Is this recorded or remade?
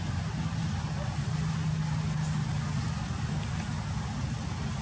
recorded